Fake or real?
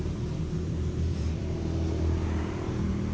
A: fake